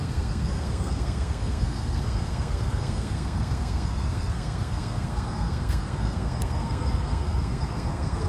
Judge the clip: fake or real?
fake